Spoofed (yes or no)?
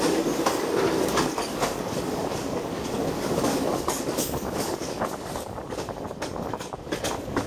yes